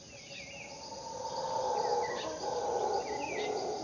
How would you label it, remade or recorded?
recorded